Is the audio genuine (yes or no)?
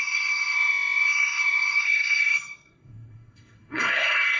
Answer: no